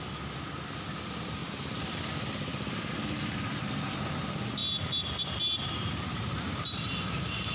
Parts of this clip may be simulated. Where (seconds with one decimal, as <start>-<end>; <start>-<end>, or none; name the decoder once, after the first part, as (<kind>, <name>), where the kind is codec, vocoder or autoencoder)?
none